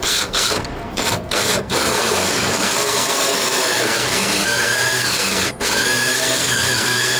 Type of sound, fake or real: fake